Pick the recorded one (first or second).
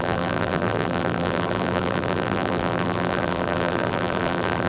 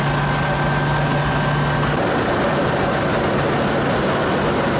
second